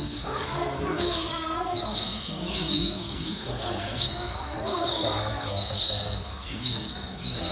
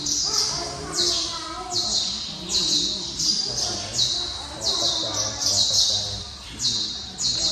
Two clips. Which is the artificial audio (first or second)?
first